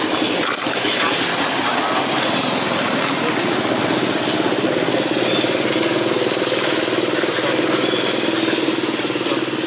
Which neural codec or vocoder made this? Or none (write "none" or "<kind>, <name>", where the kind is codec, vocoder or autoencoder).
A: none